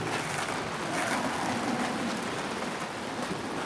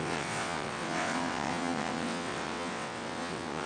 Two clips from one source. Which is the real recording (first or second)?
first